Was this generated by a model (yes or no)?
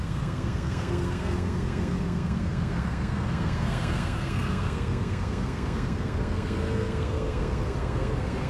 yes